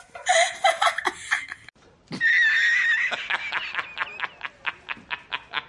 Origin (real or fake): real